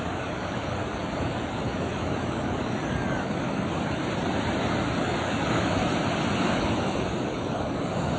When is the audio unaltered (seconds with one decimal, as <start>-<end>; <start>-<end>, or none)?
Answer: 4.0-5.0; 5.8-6.4